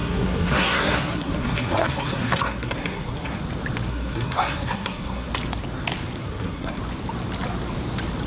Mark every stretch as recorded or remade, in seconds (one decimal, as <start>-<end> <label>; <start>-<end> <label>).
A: 0.0-3.4 remade; 3.4-3.9 recorded; 3.9-5.3 remade; 5.3-6.2 recorded; 6.2-6.8 remade; 6.8-8.3 recorded

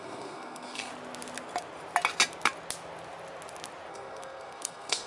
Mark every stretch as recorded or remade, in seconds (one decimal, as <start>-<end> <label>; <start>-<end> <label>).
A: 0.0-0.9 remade; 0.9-3.9 recorded; 3.9-5.1 remade

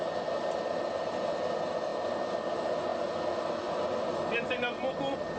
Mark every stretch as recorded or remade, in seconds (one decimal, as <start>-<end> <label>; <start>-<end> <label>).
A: 0.0-5.4 recorded

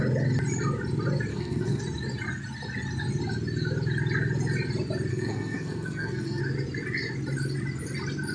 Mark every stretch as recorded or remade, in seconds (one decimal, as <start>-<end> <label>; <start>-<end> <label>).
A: 0.0-1.3 recorded; 1.3-1.8 remade; 1.8-5.1 recorded; 5.1-6.4 remade; 6.4-8.3 recorded

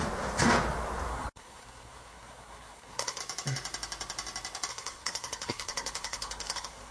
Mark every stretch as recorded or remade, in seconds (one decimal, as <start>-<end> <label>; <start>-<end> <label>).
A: 0.0-1.1 recorded; 1.1-3.2 remade; 3.2-4.7 recorded; 4.7-6.9 remade

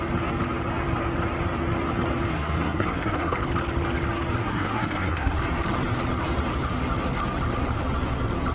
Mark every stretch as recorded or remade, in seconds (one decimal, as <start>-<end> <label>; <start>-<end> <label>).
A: 0.0-2.3 recorded; 2.3-3.4 remade; 3.4-4.4 recorded; 4.4-5.4 remade; 5.4-8.5 recorded

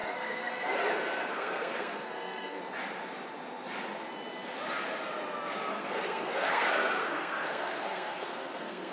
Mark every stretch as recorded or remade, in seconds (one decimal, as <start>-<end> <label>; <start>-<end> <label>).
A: 0.0-0.5 remade; 0.5-1.3 recorded; 1.3-2.6 remade; 2.6-5.7 recorded; 5.7-8.9 remade